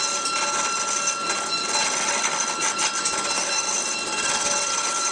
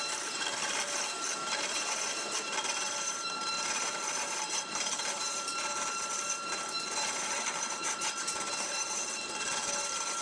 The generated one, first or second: second